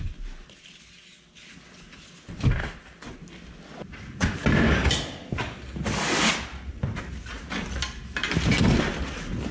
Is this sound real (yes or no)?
yes